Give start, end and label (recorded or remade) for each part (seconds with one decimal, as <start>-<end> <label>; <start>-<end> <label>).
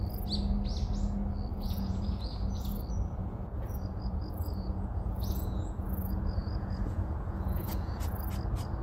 0.0-1.5 recorded; 1.5-2.7 remade; 2.7-3.2 recorded; 3.2-8.0 remade; 8.0-8.8 recorded